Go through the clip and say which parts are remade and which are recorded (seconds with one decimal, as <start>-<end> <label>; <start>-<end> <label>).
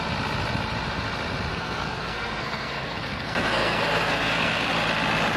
0.0-1.5 recorded; 1.5-4.7 remade; 4.7-5.4 recorded